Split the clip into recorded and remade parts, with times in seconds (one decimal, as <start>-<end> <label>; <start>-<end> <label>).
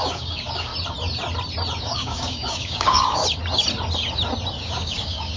0.0-0.7 remade; 0.7-1.8 recorded; 1.8-3.2 remade; 3.2-4.6 recorded; 4.6-5.4 remade